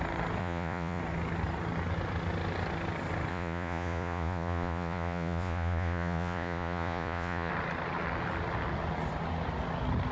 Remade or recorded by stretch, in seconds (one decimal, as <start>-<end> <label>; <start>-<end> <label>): 0.0-0.4 recorded; 0.4-1.0 remade; 1.0-3.3 recorded; 3.3-7.5 remade; 7.5-10.1 recorded